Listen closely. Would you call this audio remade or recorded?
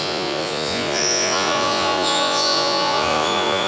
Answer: remade